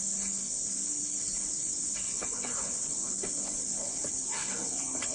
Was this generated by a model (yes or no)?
yes